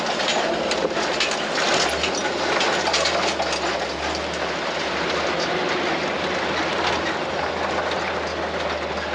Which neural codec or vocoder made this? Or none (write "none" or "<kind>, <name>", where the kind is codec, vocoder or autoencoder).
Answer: none